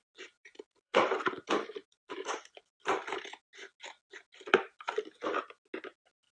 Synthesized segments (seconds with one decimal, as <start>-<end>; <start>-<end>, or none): 0.0-1.3; 1.8-2.6